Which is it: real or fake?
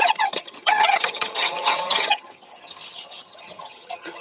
fake